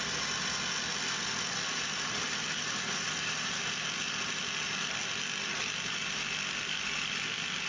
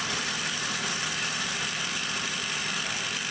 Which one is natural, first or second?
first